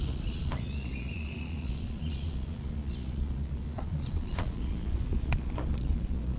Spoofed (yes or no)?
yes